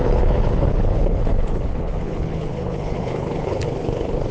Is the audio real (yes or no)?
no